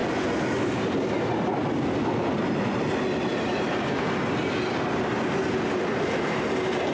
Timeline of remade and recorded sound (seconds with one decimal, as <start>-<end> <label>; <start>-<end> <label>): 0.0-6.9 recorded